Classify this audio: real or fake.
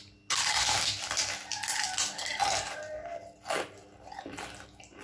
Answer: real